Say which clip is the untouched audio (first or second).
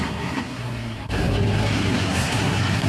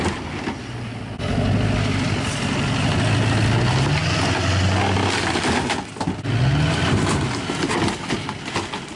second